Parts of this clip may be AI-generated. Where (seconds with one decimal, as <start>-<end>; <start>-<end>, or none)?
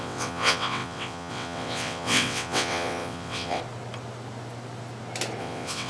0.0-3.6; 5.4-5.9